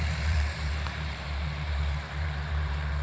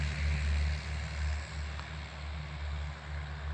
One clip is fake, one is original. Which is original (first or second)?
second